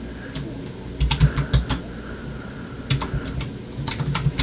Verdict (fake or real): real